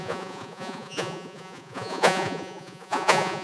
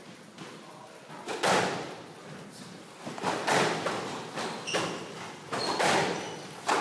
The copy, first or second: first